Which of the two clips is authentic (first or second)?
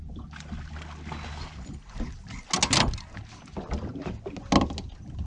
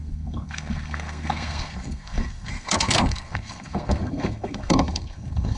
first